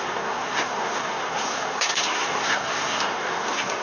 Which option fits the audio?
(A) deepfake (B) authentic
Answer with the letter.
A